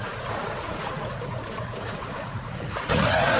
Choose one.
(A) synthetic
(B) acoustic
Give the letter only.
A